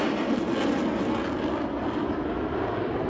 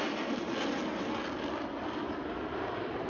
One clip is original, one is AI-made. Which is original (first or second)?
first